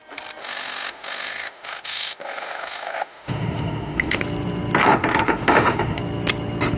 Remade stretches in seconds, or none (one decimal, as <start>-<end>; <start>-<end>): 0.4-4.2; 4.8-6.0